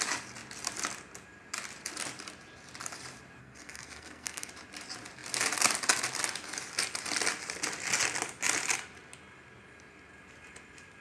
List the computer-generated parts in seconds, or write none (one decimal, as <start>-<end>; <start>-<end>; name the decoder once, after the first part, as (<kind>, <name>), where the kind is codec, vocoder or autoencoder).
3.4-4.5 (codec, SNAC)